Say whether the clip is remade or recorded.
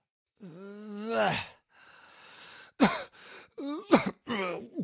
recorded